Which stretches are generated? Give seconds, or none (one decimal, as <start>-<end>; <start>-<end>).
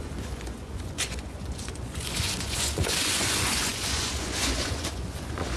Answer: 0.0-5.6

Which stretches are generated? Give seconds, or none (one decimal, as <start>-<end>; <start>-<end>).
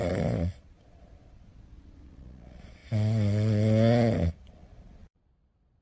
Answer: 0.0-2.8; 4.3-5.8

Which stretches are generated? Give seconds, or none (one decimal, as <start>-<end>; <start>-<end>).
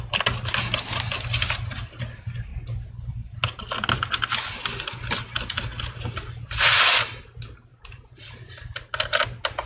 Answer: 7.7-8.9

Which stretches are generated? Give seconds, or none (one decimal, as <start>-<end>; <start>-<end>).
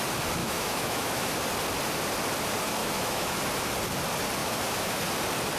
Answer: 0.4-1.3; 2.8-3.4; 4.4-5.0